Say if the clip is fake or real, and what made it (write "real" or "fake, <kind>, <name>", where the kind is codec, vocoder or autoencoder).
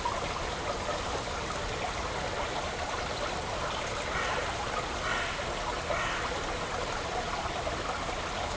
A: real